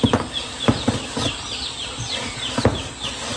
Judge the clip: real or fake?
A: real